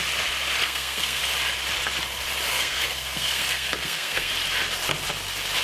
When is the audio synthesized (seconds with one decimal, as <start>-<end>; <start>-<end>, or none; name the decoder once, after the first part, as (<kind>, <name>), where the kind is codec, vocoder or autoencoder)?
0.6-1.2 (codec, SNAC); 2.5-4.3